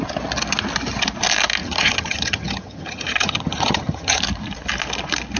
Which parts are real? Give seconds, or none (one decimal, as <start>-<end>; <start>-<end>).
0.0-1.6; 4.2-5.4